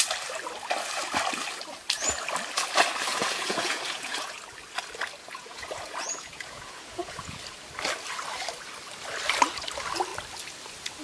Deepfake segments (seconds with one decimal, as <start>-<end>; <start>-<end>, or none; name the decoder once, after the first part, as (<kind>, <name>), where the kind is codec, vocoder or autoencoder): 3.1-4.4 (vocoder, Vocos); 5.2-7.4